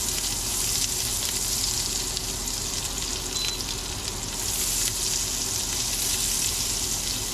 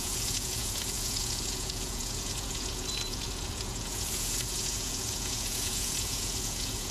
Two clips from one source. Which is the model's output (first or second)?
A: second